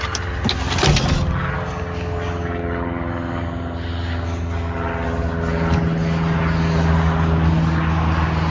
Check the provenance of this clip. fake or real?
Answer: real